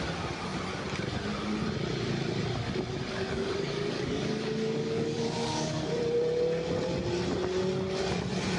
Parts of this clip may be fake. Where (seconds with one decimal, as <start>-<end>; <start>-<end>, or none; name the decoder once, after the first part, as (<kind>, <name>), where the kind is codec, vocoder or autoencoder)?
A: 3.1-6.0 (codec, DAC)